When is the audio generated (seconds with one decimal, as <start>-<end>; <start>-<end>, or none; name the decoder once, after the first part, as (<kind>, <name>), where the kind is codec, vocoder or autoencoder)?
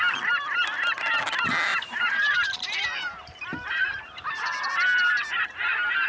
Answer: 1.7-5.4 (vocoder, BigVGAN v2)